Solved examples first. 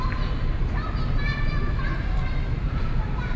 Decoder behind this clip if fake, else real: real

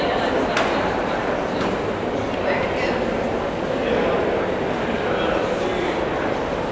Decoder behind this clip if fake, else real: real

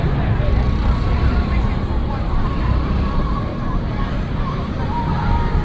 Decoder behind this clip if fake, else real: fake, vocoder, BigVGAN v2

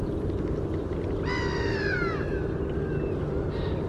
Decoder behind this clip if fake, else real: real